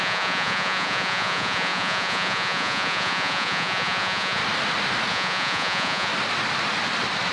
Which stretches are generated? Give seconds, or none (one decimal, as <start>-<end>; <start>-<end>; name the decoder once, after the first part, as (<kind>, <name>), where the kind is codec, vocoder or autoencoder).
0.0-4.4 (vocoder, Vocos); 5.1-6.1